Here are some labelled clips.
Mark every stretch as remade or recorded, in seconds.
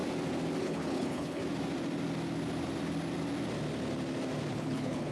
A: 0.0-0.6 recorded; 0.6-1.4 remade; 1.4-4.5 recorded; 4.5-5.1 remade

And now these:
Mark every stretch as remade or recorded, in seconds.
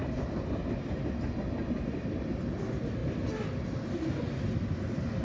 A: 0.0-5.2 recorded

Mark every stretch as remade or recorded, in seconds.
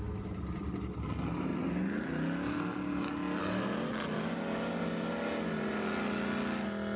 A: 0.0-7.0 recorded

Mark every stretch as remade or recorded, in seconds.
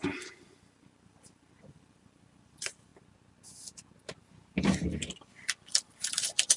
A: 0.0-2.9 remade; 2.9-5.3 recorded; 5.3-6.6 remade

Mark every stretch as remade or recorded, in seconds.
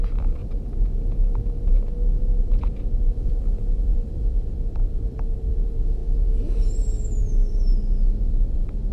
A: 0.0-0.4 remade; 0.4-2.4 recorded; 2.4-6.0 remade; 6.0-8.3 recorded; 8.3-8.9 remade